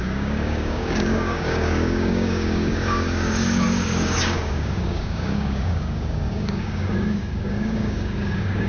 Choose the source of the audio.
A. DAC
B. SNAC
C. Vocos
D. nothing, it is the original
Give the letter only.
A